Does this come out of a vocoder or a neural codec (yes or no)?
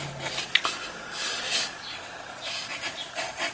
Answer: yes